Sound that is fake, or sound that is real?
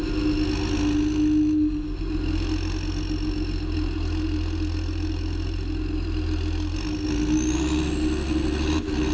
real